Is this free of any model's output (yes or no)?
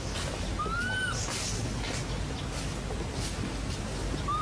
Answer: yes